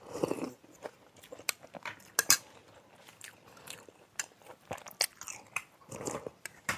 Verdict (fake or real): real